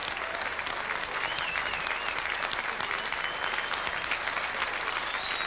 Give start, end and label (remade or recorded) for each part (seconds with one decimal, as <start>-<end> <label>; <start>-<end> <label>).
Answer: 0.0-5.5 recorded

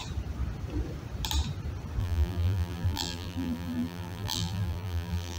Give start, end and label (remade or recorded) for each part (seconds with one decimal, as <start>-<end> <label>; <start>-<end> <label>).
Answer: 0.0-2.0 recorded; 2.0-5.4 remade

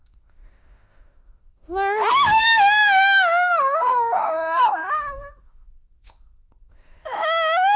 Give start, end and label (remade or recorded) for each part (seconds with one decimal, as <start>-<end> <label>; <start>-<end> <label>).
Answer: 0.0-7.8 remade

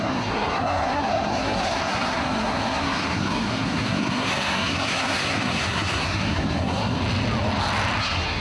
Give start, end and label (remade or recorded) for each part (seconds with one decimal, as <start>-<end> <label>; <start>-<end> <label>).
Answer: 0.0-7.0 remade; 7.0-8.0 recorded; 8.0-8.4 remade

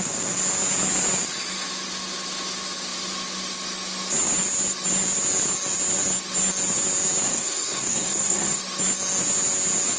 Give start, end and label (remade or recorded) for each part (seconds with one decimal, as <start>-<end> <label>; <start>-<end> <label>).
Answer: 0.0-7.3 recorded; 7.3-8.6 remade; 8.6-10.0 recorded

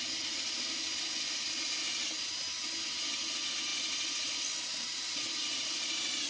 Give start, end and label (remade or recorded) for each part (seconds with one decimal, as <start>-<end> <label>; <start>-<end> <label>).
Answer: 0.0-4.7 recorded; 4.7-5.3 remade; 5.3-6.3 recorded